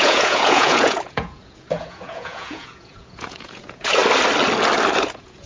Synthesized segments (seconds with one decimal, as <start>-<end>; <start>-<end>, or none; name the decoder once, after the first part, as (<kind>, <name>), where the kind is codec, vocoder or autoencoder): 0.0-4.0 (vocoder, Vocos); 5.0-5.5